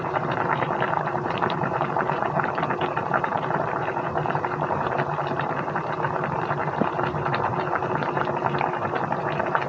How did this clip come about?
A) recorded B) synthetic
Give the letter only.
B